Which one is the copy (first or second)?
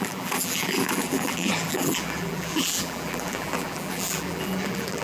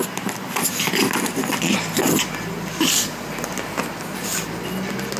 first